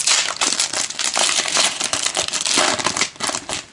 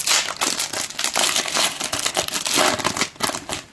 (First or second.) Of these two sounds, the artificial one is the first